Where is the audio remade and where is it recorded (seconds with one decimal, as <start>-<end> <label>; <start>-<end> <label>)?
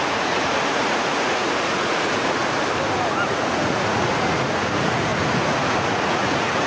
0.0-2.4 remade; 2.4-3.1 recorded; 3.1-6.7 remade